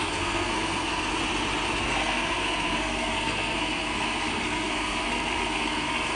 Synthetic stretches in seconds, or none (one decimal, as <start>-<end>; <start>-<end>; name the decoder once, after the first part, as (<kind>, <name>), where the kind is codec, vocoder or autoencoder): 0.0-1.1 (codec, SNAC); 1.8-6.2